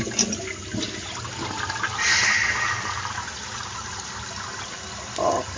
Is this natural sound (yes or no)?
yes